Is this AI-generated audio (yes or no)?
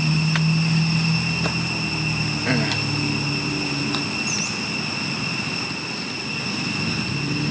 no